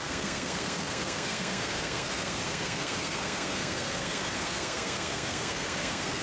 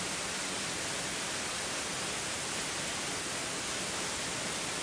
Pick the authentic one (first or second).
second